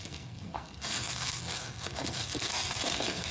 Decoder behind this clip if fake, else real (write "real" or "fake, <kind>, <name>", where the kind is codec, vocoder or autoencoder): fake, codec, SNAC